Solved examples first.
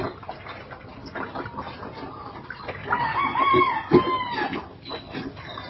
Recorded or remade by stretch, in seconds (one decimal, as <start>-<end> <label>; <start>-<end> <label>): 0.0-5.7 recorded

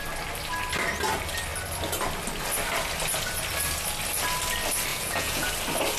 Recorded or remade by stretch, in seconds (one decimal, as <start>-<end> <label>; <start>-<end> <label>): 0.0-4.9 recorded; 4.9-5.5 remade; 5.5-6.0 recorded

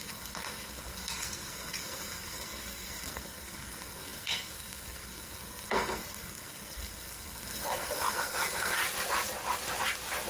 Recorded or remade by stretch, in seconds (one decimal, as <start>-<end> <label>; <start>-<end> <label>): 0.0-8.8 remade; 8.8-10.3 recorded

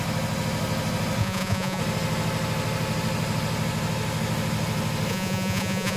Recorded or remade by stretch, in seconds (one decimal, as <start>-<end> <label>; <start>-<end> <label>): 0.0-1.2 recorded; 1.2-1.8 remade; 1.8-5.1 recorded; 5.1-6.0 remade

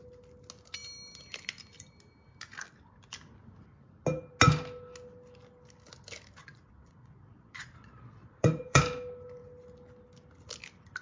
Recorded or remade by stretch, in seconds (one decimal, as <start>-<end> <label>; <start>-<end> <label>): 0.0-6.4 recorded; 6.4-8.8 remade; 8.8-11.0 recorded

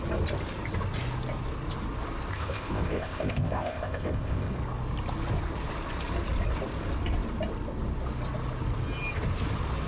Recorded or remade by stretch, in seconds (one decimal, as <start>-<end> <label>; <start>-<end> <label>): 0.0-2.3 recorded; 2.3-4.5 remade; 4.5-9.9 recorded

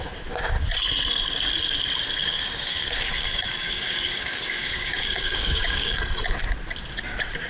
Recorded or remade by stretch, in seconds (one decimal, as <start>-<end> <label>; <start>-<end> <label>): 0.0-2.2 recorded; 2.2-6.0 remade; 6.0-7.5 recorded

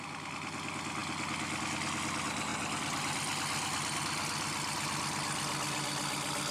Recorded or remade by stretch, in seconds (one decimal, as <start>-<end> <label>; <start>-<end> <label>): 0.0-6.5 recorded